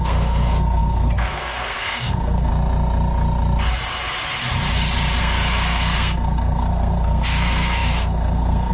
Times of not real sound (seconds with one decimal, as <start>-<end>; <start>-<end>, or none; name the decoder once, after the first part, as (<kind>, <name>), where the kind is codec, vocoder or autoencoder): 0.0-2.5 (codec, SNAC); 5.2-8.7